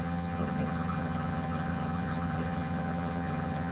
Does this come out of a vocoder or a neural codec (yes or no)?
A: yes